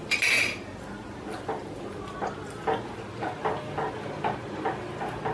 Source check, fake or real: real